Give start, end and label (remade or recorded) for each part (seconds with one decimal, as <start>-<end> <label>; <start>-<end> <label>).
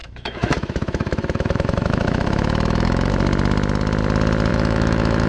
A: 0.0-3.1 remade; 3.1-4.5 recorded; 4.5-5.3 remade